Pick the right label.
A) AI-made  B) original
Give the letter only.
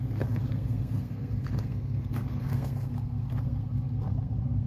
A